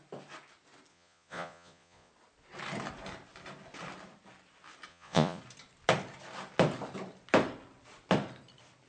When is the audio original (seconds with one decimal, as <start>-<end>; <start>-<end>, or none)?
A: 0.0-0.9; 2.1-4.9; 5.4-8.9

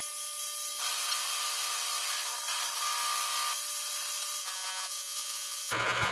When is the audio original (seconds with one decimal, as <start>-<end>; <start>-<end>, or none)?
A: 0.0-4.4

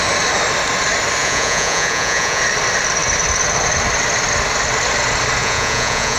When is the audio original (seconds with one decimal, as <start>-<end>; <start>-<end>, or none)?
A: 0.0-1.2; 2.4-5.4